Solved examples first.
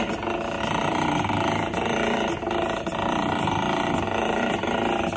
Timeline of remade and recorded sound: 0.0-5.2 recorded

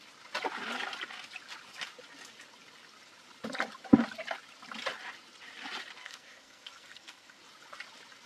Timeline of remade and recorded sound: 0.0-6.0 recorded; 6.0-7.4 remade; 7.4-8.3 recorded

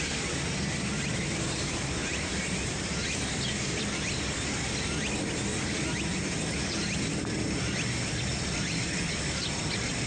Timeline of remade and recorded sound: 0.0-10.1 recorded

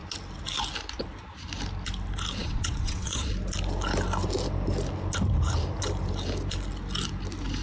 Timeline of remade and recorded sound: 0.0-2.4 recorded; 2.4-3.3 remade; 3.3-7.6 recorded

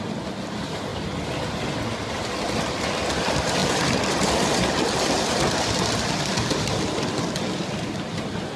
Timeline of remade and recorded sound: 0.0-8.6 recorded

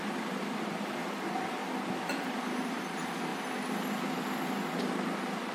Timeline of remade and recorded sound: 0.0-1.6 remade; 1.6-2.2 recorded; 2.2-3.3 remade; 3.3-4.8 recorded; 4.8-5.5 remade

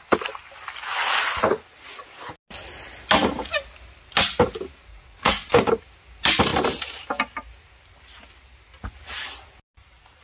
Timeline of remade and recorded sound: 0.0-4.9 recorded; 4.9-5.5 remade; 5.5-10.2 recorded